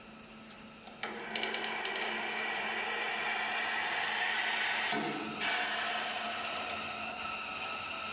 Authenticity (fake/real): real